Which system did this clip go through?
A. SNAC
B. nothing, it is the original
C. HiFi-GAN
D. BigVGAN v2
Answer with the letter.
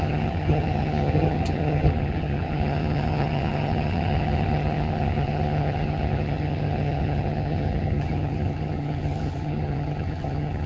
C